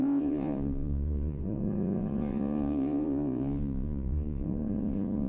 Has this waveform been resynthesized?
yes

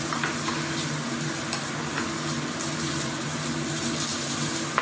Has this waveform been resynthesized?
no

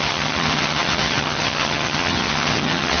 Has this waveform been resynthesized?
yes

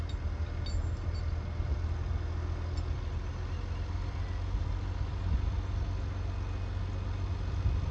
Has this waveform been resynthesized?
no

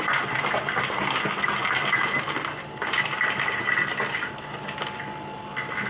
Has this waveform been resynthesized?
no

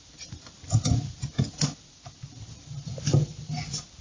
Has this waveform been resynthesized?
no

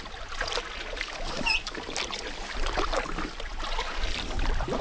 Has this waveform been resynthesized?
no